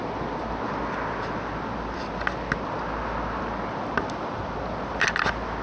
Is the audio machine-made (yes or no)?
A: no